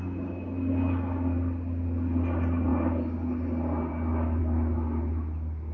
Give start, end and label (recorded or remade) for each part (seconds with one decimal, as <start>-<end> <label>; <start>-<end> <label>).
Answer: 0.0-5.7 recorded